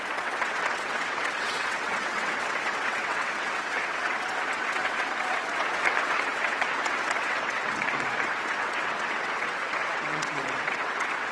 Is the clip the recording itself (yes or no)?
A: no